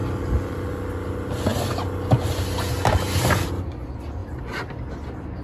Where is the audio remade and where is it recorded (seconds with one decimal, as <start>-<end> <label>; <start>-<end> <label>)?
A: 0.0-4.2 recorded; 4.2-4.8 remade; 4.8-5.4 recorded

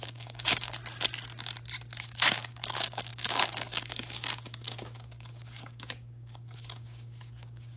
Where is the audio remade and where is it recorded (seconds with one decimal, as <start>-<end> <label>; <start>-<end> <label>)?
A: 0.0-0.8 remade; 0.8-2.0 recorded; 2.0-7.8 remade